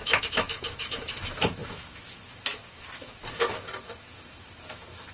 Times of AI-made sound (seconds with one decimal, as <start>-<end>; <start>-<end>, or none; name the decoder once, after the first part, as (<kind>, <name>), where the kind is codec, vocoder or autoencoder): 0.0-5.1 (autoencoder, DAC-VAE)